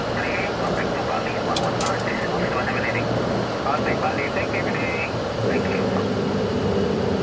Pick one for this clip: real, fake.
real